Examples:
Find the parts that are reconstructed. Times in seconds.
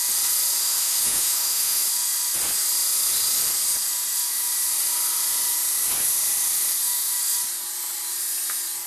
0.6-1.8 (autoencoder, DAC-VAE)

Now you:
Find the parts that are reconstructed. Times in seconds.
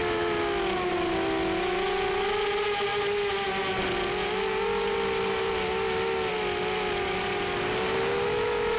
none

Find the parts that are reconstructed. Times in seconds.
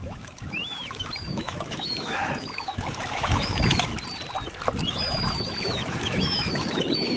0.0-3.9 (autoencoder, DAC-VAE); 4.9-7.2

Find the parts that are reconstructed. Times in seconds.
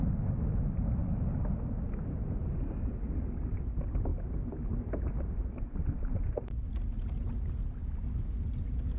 none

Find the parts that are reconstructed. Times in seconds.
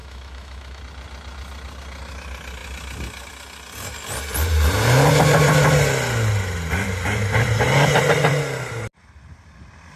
0.0-0.8 (autoencoder, DAC-VAE)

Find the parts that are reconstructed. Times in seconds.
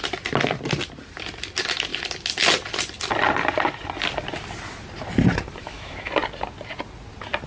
5.6-6.1 (autoencoder, DAC-VAE)